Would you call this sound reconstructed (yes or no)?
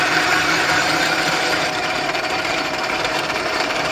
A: yes